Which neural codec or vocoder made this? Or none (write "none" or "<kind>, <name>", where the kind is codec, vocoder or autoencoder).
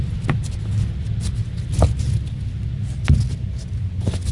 none